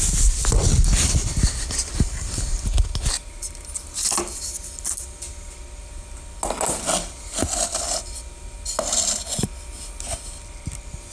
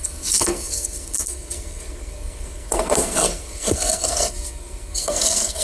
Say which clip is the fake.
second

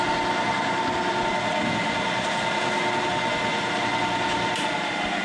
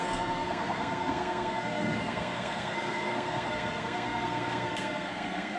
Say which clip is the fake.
second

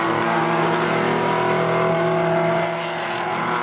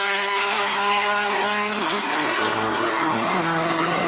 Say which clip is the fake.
second